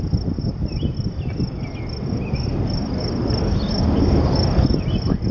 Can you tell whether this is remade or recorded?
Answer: recorded